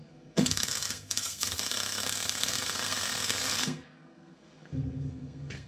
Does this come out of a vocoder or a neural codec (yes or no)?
yes